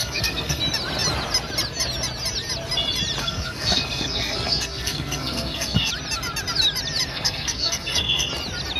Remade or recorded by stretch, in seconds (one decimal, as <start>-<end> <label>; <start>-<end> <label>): 0.0-0.6 remade; 0.6-3.2 recorded; 3.2-5.9 remade; 5.9-7.1 recorded; 7.1-8.3 remade; 8.3-8.8 recorded